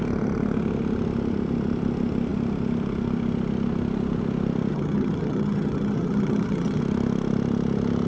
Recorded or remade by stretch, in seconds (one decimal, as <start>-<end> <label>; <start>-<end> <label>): 0.0-4.7 recorded; 4.7-6.8 remade; 6.8-8.1 recorded